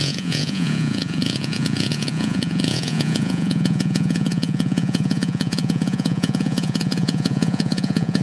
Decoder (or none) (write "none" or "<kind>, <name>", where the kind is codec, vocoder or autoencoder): vocoder, Vocos